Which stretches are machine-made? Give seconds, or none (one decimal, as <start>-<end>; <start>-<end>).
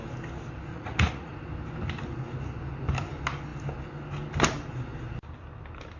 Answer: 0.7-1.3